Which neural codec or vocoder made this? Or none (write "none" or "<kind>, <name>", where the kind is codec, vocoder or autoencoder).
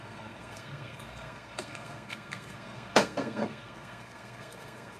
codec, SNAC